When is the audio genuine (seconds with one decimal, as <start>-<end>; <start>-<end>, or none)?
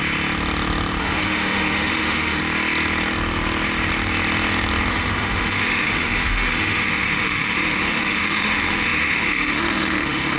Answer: 0.0-1.0; 2.4-4.9